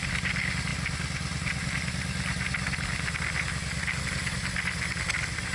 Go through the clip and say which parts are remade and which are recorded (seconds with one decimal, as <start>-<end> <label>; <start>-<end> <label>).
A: 0.0-5.5 recorded